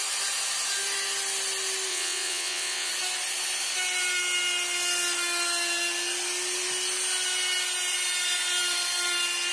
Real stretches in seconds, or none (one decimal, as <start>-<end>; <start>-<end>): 0.0-1.9; 2.9-9.5